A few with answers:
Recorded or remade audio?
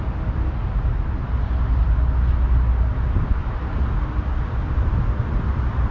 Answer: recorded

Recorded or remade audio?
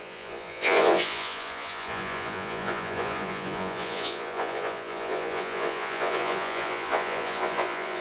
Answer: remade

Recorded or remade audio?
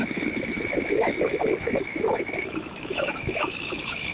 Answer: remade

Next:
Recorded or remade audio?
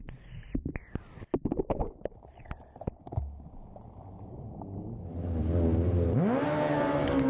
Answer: recorded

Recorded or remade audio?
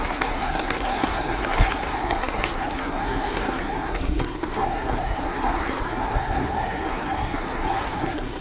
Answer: remade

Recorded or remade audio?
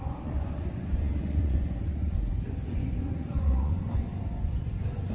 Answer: remade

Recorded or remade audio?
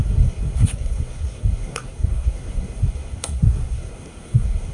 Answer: remade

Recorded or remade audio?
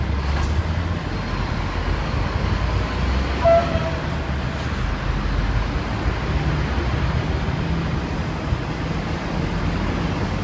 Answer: recorded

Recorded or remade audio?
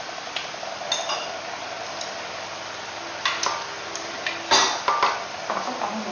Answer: recorded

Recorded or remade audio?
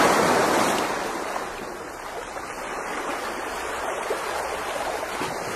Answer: recorded